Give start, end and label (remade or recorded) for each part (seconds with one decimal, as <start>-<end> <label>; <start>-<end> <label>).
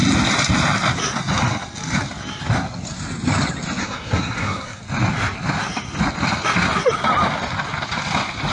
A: 0.0-3.8 recorded; 3.8-4.8 remade; 4.8-8.5 recorded